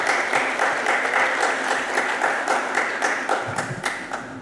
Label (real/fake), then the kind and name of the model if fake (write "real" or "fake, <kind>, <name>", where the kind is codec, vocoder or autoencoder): real